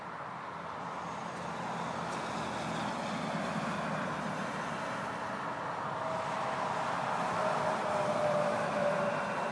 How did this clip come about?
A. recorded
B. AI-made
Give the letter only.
A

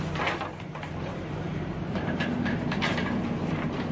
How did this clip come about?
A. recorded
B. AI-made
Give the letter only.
B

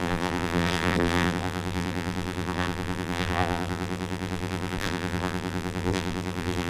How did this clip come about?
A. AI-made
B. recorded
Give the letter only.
A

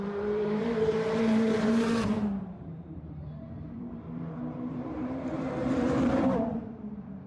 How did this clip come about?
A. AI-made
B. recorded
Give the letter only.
A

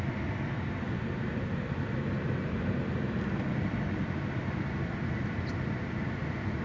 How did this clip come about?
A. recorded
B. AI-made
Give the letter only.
A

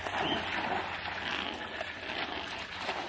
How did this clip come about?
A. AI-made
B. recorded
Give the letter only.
B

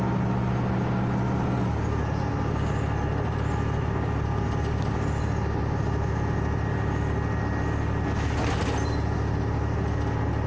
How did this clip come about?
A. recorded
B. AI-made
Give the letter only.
A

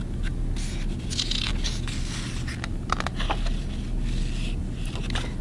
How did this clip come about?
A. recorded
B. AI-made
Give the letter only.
A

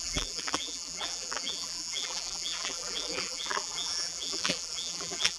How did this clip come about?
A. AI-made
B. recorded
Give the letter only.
A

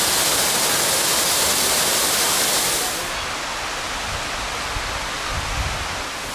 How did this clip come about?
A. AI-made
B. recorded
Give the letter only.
B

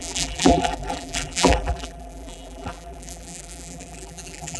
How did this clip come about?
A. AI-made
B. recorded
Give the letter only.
A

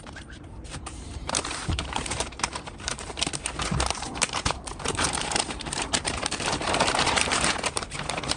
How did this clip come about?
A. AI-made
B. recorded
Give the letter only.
A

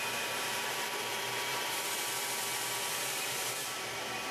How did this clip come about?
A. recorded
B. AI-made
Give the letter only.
B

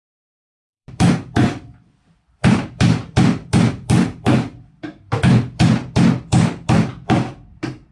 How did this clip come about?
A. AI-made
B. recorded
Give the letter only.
A